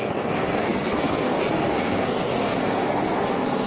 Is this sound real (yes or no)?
no